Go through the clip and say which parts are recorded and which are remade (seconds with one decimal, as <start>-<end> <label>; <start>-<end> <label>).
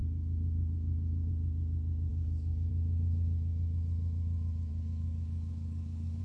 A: 0.0-1.3 remade; 1.3-2.1 recorded; 2.1-2.7 remade; 2.7-4.7 recorded; 4.7-6.2 remade